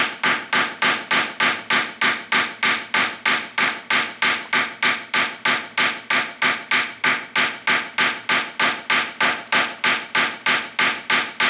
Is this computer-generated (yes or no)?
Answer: no